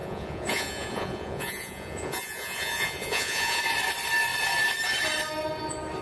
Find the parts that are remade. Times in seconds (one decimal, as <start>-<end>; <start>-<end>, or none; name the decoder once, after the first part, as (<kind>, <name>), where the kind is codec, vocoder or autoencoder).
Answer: 0.0-3.6 (vocoder, Vocos)